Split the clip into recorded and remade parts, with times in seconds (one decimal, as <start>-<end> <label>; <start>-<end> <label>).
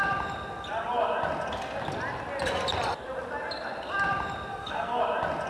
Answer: 0.0-4.5 recorded; 4.5-5.0 remade; 5.0-5.5 recorded